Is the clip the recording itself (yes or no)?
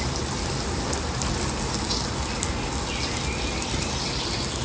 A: yes